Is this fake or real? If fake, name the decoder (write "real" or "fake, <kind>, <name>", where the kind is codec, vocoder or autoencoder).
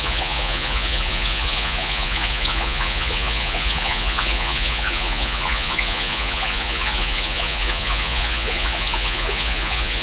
fake, vocoder, Vocos